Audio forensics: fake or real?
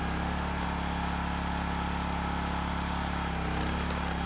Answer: real